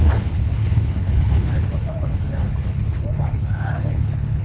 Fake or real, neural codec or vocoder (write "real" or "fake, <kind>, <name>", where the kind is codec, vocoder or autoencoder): fake, codec, HILCodec